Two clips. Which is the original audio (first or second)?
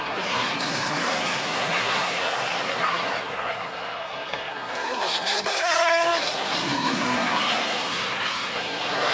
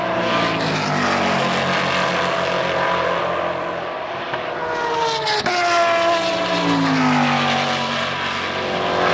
second